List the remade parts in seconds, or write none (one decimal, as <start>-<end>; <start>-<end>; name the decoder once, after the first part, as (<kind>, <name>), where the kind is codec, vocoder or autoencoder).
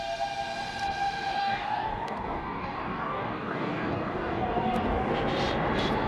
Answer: 1.4-5.1 (codec, DAC)